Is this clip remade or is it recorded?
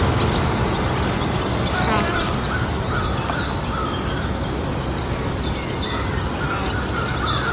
recorded